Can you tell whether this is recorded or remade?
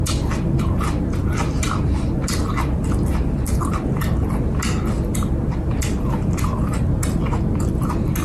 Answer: recorded